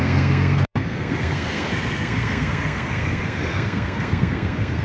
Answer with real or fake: fake